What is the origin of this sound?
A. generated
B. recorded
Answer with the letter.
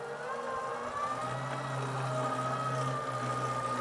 B